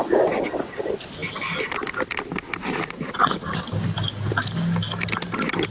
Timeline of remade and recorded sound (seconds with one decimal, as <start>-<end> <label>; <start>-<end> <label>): 0.0-5.7 recorded